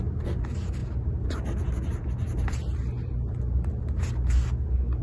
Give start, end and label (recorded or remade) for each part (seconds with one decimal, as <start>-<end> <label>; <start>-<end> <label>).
0.0-5.0 recorded